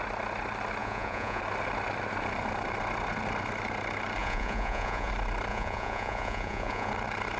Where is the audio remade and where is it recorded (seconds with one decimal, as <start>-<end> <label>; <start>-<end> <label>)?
0.0-0.8 recorded; 0.8-1.4 remade; 1.4-4.2 recorded; 4.2-5.1 remade; 5.1-5.5 recorded; 5.5-6.9 remade; 6.9-7.4 recorded